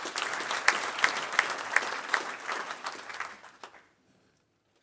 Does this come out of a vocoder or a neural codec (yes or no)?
no